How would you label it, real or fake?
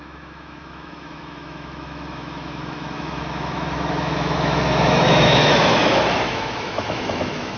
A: fake